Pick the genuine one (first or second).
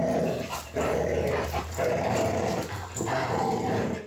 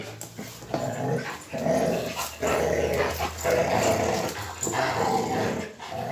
second